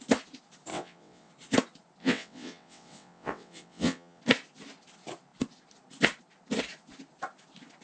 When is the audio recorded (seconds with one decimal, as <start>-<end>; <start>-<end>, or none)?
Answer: 0.0-0.7; 1.3-2.0; 4.2-7.8